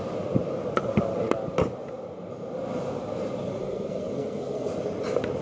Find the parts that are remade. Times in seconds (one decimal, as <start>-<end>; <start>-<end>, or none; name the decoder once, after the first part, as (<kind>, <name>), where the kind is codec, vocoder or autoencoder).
3.6-4.7 (codec, SNAC)